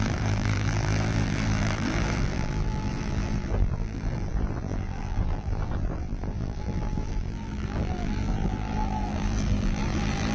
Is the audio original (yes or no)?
no